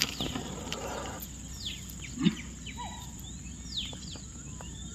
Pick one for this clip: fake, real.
fake